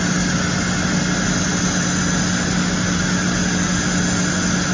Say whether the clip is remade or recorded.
recorded